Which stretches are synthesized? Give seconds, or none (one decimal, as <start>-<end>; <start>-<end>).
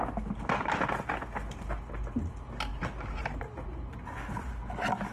2.7-4.5